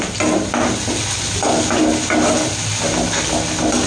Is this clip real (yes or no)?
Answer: yes